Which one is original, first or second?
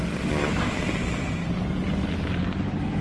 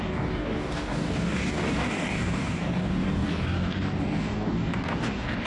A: first